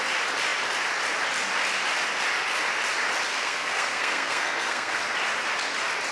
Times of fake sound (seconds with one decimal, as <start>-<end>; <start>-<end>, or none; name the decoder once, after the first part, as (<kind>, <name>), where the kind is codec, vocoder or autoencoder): 3.3-5.0 (codec, SNAC)

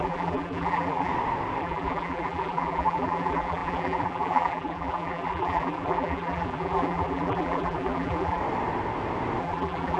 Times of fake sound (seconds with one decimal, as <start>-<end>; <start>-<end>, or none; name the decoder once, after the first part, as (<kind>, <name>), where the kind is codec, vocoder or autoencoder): 0.0-1.1 (vocoder, BigVGAN v2); 1.6-8.4; 9.4-10.0

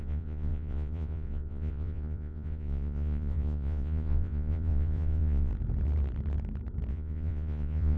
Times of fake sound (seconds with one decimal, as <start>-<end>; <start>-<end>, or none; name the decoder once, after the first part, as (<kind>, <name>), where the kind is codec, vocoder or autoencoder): 0.0-5.5 (vocoder, Vocos); 6.9-8.0

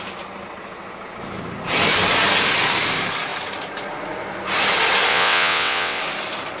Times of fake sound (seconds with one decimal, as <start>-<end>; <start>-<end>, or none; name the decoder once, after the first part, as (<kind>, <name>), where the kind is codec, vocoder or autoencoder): 5.1-6.0 (vocoder, WaveNeXt)

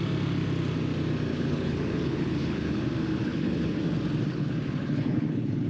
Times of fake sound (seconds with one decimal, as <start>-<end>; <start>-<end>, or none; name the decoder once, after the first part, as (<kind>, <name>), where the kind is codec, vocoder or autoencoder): 1.3-2.8 (codec, HILCodec); 3.2-3.8; 4.3-5.7

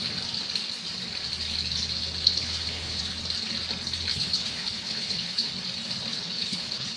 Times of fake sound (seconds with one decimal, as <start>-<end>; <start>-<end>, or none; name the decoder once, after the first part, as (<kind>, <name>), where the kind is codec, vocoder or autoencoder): 2.4-3.0 (codec, HILCodec); 4.1-5.5; 6.1-7.0

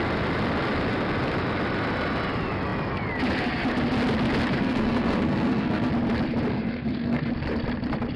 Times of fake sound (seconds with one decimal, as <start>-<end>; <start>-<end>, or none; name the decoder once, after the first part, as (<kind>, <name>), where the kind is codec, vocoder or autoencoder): 4.6-5.9 (codec, SNAC); 6.5-7.3